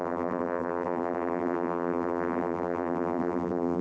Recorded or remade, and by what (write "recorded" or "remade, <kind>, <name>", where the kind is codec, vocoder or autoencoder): remade, vocoder, BigVGAN v2